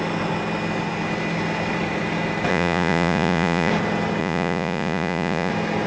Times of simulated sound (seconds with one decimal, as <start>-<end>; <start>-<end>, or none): 2.5-3.7; 4.2-5.5